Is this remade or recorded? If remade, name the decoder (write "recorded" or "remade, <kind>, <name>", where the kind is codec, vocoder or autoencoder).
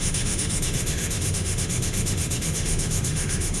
remade, autoencoder, DAC-VAE